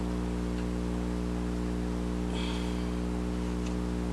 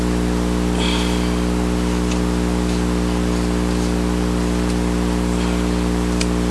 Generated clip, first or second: second